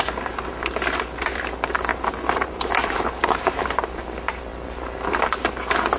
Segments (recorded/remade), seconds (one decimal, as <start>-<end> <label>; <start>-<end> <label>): 0.0-1.9 recorded; 1.9-3.6 remade; 3.6-6.0 recorded